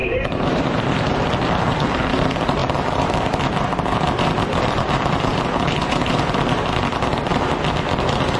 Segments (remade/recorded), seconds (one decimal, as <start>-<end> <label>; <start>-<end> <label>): 0.0-0.6 remade; 0.6-2.6 recorded; 2.6-3.2 remade; 3.2-8.4 recorded